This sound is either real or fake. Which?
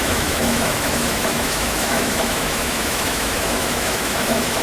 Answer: fake